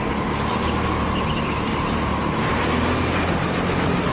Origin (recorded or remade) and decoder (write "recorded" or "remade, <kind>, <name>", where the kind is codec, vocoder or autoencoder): recorded